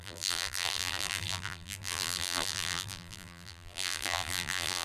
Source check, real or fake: fake